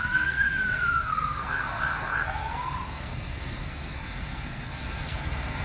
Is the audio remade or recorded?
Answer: remade